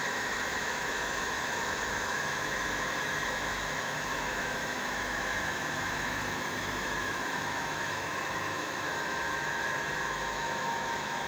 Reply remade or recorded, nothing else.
remade